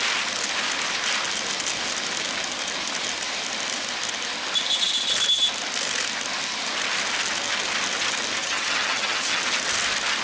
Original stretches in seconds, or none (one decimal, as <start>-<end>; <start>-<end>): 0.0-8.4; 9.4-10.2